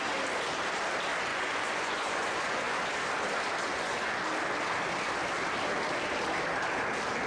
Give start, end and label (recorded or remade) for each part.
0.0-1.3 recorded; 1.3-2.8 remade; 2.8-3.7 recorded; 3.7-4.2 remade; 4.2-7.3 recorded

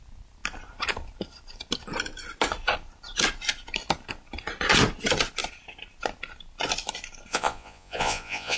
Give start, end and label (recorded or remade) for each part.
0.0-7.3 recorded; 7.3-8.6 remade

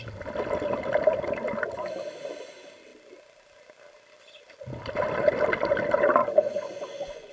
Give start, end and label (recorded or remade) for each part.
0.0-6.2 recorded; 6.2-7.3 remade

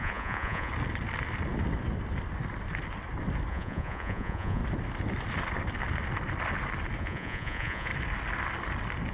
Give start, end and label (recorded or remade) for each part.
0.0-0.7 remade; 0.7-3.5 recorded; 3.5-4.6 remade; 4.6-7.0 recorded; 7.0-7.9 remade; 7.9-9.1 recorded

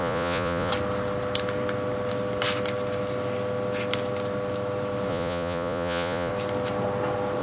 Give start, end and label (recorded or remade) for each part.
0.0-0.7 remade; 0.7-5.1 recorded; 5.1-6.3 remade; 6.3-7.4 recorded